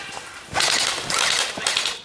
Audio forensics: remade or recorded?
remade